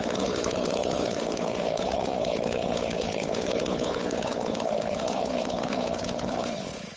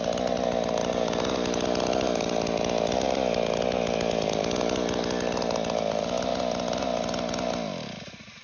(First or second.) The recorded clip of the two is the second